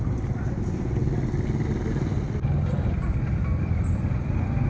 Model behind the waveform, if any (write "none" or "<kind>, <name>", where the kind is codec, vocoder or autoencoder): none